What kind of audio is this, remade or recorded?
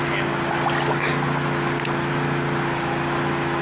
recorded